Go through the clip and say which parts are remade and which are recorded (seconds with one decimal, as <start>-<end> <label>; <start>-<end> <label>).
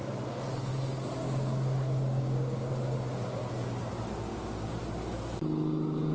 0.0-1.2 recorded; 1.2-2.7 remade; 2.7-4.3 recorded; 4.3-4.8 remade; 4.8-6.1 recorded